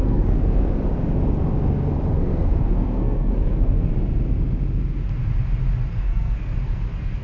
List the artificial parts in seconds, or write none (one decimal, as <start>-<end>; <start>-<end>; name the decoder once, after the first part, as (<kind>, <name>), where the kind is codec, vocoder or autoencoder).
0.0-0.4 (codec, SNAC); 2.1-3.9; 5.9-7.2